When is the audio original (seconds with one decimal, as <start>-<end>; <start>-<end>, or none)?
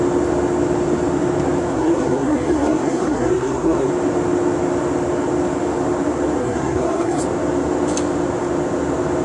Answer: 0.0-1.7; 3.9-6.4; 7.2-9.2